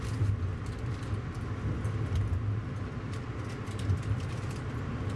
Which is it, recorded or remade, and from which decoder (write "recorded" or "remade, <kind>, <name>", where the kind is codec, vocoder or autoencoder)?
recorded